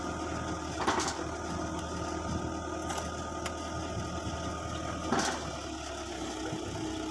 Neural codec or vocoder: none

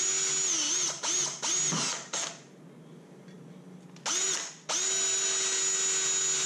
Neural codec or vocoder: none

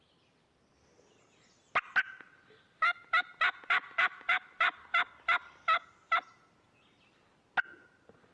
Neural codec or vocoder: none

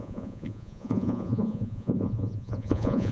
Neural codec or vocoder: vocoder, Vocos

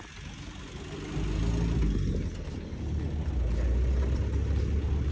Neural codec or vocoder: none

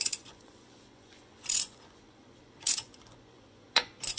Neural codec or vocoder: vocoder, Vocos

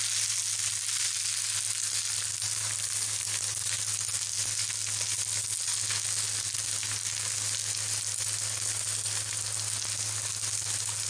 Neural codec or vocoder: none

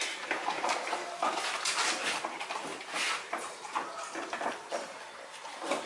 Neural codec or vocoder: none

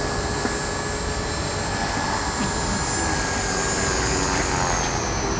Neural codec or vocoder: none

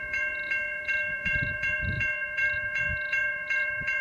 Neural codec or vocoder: vocoder, Vocos